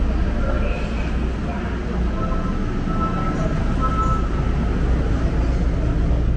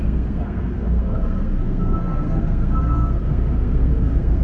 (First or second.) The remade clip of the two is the second